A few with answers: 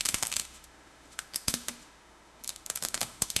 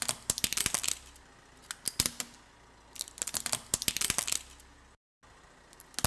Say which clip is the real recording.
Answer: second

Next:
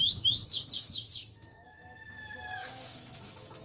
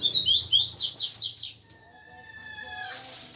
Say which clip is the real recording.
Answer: second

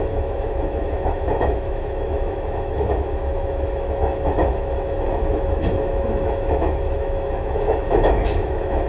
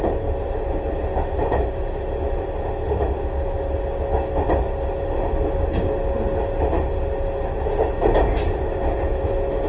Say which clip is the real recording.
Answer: second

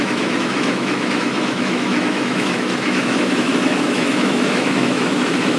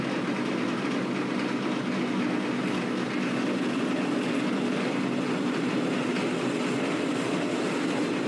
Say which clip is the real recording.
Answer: second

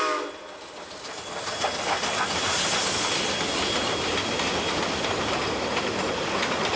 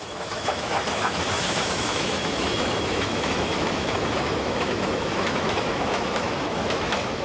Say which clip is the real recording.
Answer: first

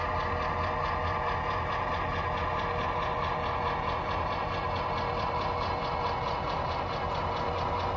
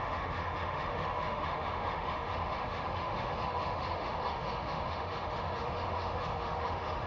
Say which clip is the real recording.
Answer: first